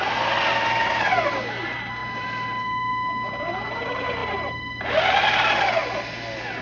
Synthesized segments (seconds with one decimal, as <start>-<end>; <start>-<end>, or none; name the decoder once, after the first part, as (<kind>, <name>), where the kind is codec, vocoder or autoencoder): none